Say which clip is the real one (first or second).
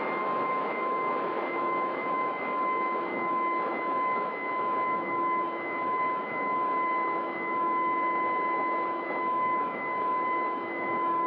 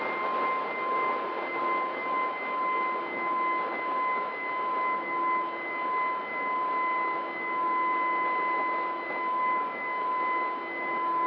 second